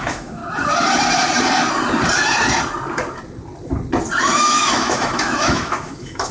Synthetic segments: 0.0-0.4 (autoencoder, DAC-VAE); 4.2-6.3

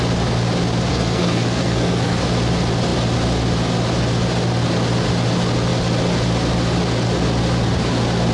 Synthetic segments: 0.9-2.2 (codec, SNAC)

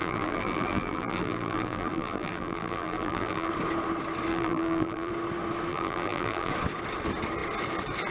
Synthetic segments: 0.0-3.5 (vocoder, BigVGAN v2); 4.3-5.1; 5.7-6.5

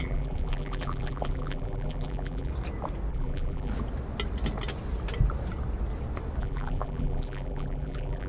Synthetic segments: 0.0-2.5 (vocoder, BigVGAN v2); 3.1-3.7; 6.4-8.3

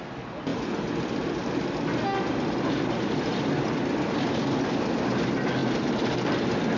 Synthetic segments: none

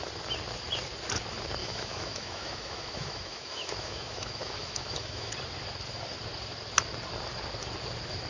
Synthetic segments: 1.6-5.3 (autoencoder, DAC-VAE)

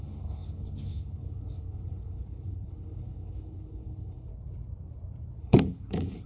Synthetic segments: 0.0-4.3 (codec, HILCodec); 5.4-6.3

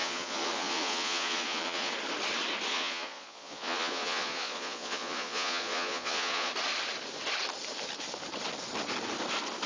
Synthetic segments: 0.0-1.9 (vocoder, Vocos); 2.7-6.5